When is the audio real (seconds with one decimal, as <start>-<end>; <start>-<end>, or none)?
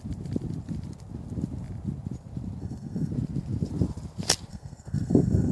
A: 0.0-2.6; 3.1-4.5